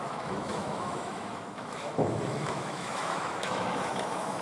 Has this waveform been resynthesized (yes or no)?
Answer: yes